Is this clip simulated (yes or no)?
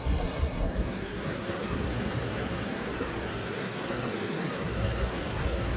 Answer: yes